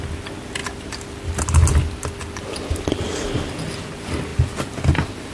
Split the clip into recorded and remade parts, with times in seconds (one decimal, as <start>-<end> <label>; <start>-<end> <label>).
0.0-5.3 recorded